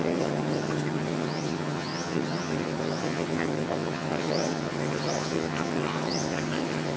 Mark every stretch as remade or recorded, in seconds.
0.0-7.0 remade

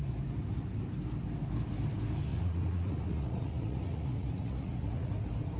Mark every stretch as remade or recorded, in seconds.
0.0-2.3 recorded; 2.3-5.1 remade; 5.1-5.6 recorded